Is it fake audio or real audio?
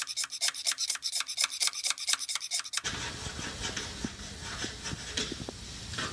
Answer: real